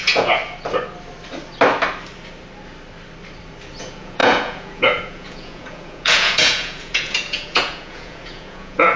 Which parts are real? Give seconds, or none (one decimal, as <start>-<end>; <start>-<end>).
0.4-3.8